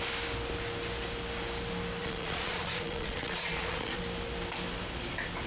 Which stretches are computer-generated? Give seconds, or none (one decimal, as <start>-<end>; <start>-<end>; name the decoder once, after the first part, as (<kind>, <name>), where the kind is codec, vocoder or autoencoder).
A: 2.0-4.0 (vocoder, Vocos)